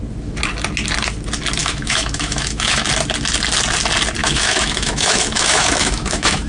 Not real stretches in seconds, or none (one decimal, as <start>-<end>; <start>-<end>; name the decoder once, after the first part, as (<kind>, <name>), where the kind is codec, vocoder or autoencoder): 1.6-2.9 (autoencoder, DAC-VAE); 4.2-6.5